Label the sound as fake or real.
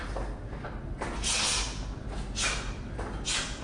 real